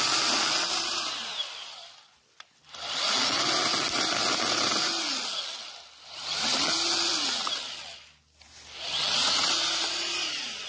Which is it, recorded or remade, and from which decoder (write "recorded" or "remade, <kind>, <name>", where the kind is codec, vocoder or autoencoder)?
recorded